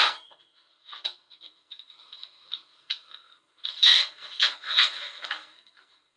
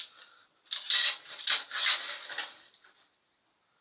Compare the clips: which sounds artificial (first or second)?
first